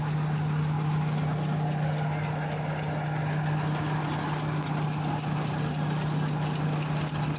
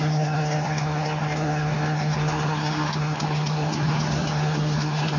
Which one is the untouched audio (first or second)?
first